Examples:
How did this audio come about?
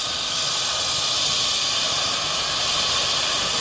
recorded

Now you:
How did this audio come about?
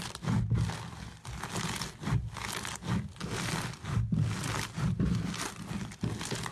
recorded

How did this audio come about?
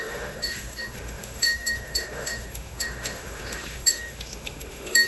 remade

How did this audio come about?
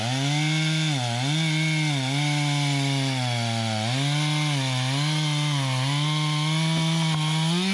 recorded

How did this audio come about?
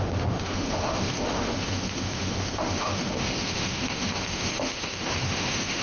remade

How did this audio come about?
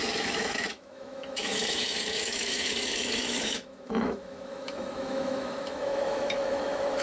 remade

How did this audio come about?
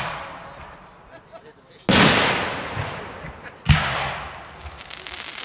recorded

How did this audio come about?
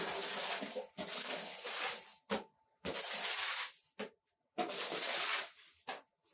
recorded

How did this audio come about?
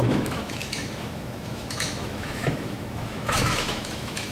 remade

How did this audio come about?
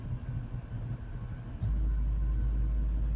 recorded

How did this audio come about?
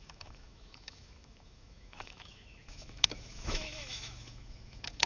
remade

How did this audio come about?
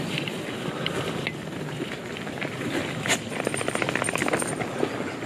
recorded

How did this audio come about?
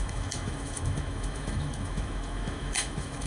remade